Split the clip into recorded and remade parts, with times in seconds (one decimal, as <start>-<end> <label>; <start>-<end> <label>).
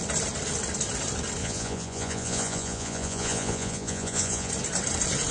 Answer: 0.0-1.4 recorded; 1.4-4.5 remade; 4.5-5.3 recorded